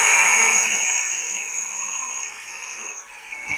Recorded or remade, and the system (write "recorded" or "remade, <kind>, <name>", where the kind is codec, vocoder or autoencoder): remade, codec, SNAC